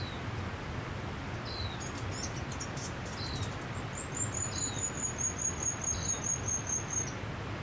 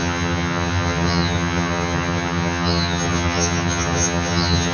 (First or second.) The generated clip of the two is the second